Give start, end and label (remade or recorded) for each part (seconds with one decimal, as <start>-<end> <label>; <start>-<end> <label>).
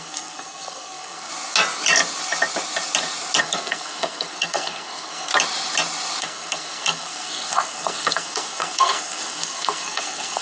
0.0-1.3 remade; 1.3-3.4 recorded; 3.4-5.3 remade; 5.3-6.2 recorded; 6.2-10.4 remade